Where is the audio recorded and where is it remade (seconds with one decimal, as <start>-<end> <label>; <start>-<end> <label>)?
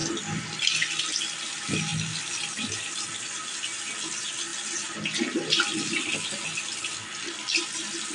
0.0-8.1 recorded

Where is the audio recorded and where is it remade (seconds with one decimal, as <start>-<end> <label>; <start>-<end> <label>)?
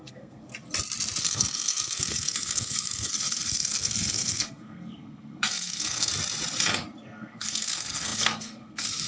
0.0-0.5 remade; 0.5-1.2 recorded; 1.2-6.1 remade; 6.1-7.0 recorded; 7.0-9.1 remade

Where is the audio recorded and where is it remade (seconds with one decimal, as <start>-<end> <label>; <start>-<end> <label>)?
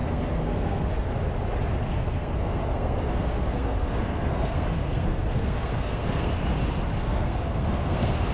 0.0-1.1 remade; 1.1-1.9 recorded; 1.9-6.3 remade; 6.3-7.0 recorded; 7.0-8.3 remade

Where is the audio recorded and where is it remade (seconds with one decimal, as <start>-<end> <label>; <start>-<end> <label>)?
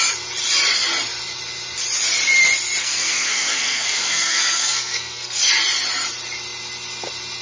0.0-2.8 recorded; 2.8-5.4 remade; 5.4-7.4 recorded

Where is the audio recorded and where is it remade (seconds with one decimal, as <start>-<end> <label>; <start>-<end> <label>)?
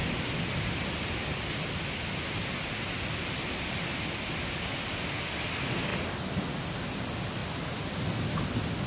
0.0-8.9 recorded